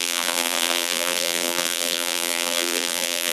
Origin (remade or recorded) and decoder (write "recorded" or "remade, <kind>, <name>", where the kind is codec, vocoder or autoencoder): remade, vocoder, BigVGAN v2